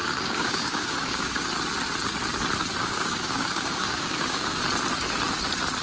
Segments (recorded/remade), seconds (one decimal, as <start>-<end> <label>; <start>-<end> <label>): 0.0-1.5 remade; 1.5-2.8 recorded; 2.8-4.6 remade; 4.6-5.8 recorded